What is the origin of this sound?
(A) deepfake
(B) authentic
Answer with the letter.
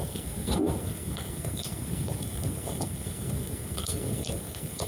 A